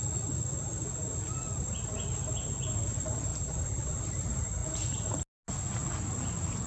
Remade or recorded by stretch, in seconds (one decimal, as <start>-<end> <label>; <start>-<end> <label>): 0.0-3.3 recorded; 3.3-4.0 remade; 4.0-6.7 recorded